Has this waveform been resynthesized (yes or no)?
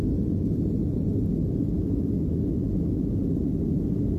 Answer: no